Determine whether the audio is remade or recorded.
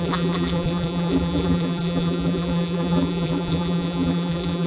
remade